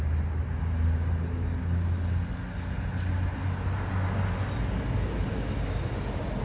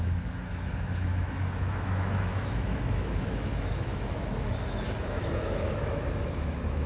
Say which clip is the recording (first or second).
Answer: first